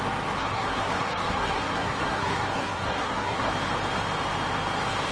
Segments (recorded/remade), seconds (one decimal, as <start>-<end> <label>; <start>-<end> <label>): 0.0-0.4 recorded; 0.4-3.5 remade; 3.5-5.1 recorded